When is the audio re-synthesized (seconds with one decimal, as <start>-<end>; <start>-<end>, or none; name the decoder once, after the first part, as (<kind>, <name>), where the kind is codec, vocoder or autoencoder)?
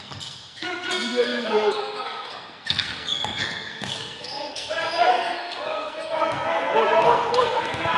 0.0-8.0 (codec, SNAC)